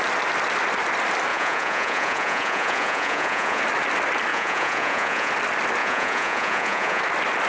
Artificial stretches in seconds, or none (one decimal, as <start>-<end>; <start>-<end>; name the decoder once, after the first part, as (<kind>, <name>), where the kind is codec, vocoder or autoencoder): 1.3-3.6 (vocoder, Vocos); 4.3-5.3; 5.8-7.0